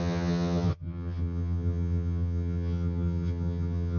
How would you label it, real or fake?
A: fake